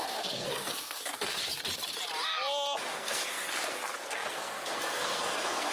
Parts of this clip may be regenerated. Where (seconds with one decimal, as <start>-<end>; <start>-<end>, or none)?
0.0-1.4; 2.9-5.7